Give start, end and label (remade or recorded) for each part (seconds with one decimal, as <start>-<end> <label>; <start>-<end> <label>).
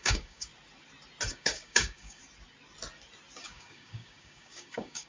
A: 0.0-0.5 remade; 0.5-1.3 recorded; 1.3-2.2 remade; 2.2-3.4 recorded; 3.4-5.1 remade